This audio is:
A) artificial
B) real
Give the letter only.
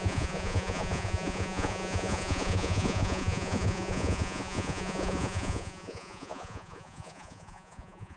A